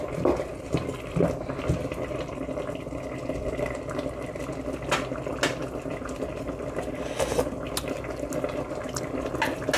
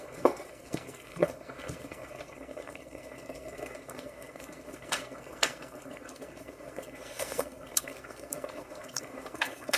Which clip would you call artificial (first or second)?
second